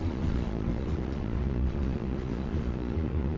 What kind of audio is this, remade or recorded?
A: remade